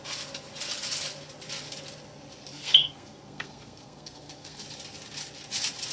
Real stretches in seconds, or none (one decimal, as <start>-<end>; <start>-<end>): 0.0-2.5; 4.6-5.9